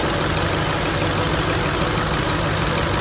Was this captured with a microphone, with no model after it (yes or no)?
yes